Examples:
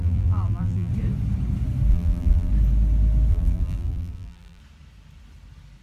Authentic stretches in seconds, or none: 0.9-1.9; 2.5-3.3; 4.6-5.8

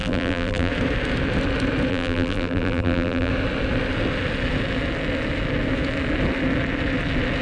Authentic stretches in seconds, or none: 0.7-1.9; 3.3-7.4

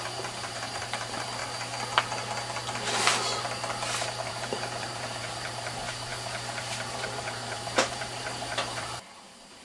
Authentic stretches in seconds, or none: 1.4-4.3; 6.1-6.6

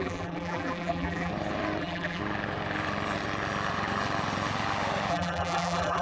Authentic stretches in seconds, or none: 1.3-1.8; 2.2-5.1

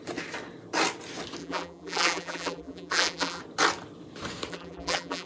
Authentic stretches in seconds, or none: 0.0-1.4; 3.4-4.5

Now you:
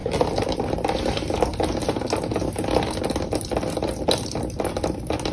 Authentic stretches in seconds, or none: 0.6-5.3